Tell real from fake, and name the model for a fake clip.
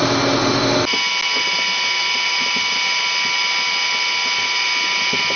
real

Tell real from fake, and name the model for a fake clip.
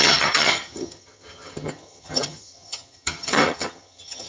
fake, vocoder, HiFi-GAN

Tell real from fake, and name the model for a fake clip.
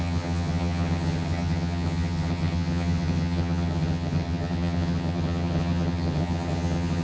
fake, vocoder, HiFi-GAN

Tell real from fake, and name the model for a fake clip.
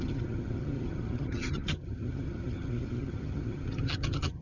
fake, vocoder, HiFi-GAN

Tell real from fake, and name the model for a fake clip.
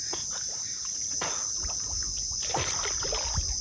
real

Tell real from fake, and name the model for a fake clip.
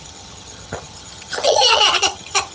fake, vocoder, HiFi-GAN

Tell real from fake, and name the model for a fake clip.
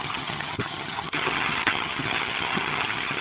fake, vocoder, HiFi-GAN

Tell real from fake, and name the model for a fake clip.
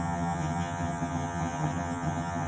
fake, vocoder, HiFi-GAN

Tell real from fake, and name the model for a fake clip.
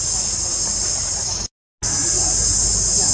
real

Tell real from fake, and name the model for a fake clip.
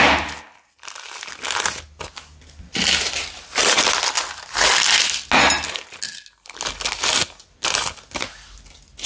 real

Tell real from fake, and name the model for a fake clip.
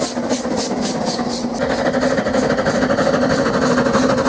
real